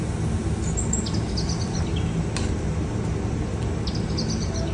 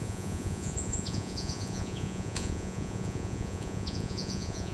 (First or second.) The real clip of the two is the first